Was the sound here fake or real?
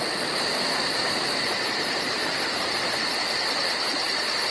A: real